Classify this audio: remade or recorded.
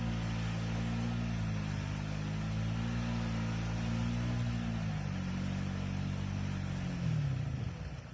recorded